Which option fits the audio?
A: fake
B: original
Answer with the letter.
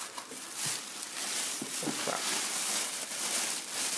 B